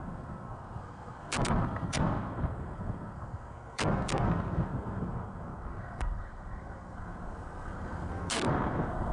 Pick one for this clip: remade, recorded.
remade